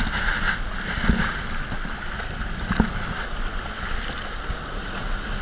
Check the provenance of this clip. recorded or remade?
recorded